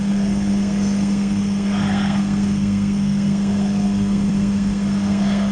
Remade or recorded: remade